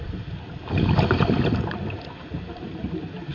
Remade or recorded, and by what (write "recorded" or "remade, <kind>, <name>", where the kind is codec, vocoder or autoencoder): recorded